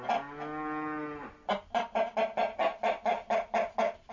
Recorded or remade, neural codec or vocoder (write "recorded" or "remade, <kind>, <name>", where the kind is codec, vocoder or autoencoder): recorded